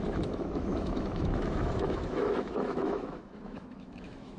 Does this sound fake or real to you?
fake